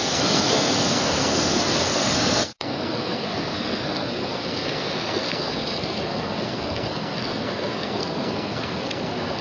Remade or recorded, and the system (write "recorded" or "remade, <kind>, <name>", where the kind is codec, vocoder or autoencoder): remade, codec, SNAC